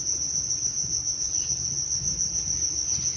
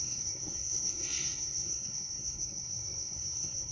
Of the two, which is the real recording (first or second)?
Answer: first